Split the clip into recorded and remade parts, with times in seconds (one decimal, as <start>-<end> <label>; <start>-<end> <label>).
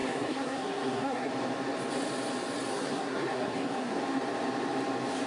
0.0-1.3 remade; 1.3-2.7 recorded; 2.7-4.0 remade; 4.0-5.3 recorded